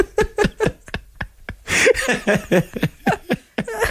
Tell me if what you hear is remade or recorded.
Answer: recorded